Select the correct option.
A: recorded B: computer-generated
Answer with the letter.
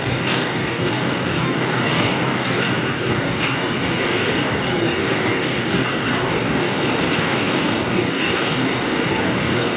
B